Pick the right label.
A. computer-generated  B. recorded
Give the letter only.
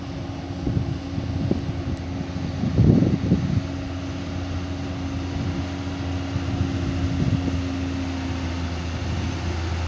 B